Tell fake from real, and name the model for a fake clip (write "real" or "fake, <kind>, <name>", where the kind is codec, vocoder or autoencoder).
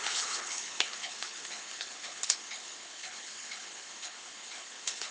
fake, codec, HILCodec